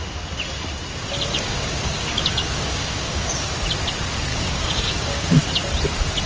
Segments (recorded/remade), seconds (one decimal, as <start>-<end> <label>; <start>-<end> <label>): 0.0-1.3 recorded; 1.3-3.5 remade; 3.5-4.3 recorded; 4.3-5.5 remade; 5.5-6.3 recorded